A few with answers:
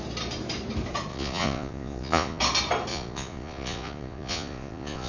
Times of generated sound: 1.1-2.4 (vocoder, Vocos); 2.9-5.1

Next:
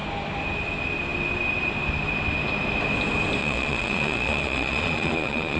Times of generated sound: 3.4-5.6 (vocoder, Vocos)

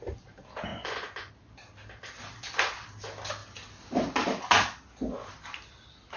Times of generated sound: 0.7-1.3 (vocoder, Vocos)